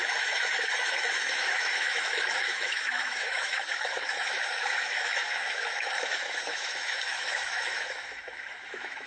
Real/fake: fake